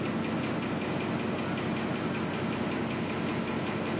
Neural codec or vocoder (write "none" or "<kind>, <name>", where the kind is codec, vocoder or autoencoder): none